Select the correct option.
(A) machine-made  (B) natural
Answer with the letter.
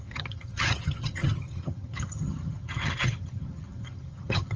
A